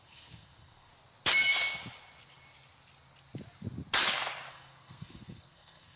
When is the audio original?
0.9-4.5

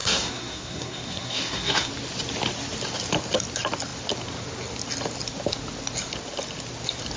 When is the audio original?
1.9-7.2

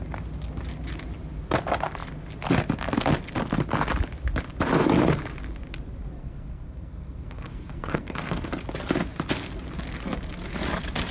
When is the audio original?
0.0-6.2; 8.5-11.1

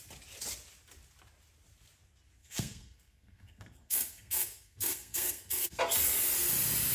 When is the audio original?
0.0-2.4; 5.8-6.9

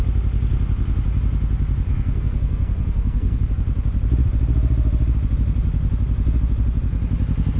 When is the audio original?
0.0-1.9; 3.5-7.6